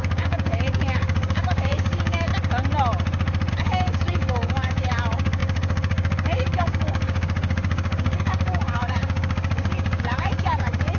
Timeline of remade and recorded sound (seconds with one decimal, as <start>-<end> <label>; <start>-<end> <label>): 0.0-2.3 remade; 2.3-3.5 recorded; 3.5-11.0 remade